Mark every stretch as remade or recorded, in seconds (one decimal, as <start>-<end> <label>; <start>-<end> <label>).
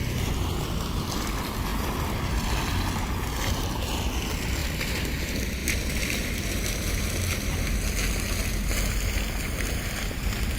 0.0-10.6 recorded